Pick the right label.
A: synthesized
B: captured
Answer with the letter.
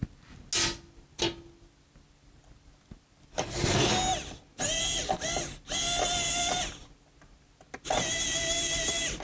B